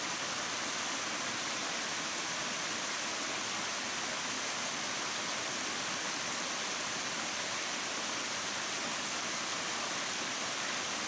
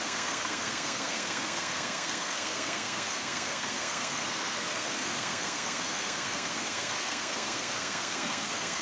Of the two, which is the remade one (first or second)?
second